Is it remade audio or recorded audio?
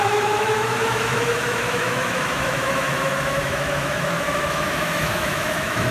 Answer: remade